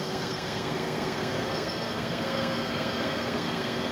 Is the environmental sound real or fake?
fake